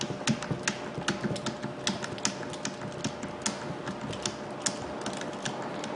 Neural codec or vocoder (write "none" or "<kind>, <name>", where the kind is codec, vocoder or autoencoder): none